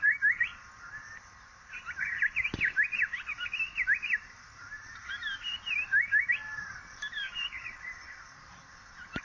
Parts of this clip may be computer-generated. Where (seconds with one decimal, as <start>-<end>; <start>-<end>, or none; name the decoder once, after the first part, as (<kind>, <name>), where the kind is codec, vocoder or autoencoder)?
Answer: 0.0-9.2 (vocoder, BigVGAN v2)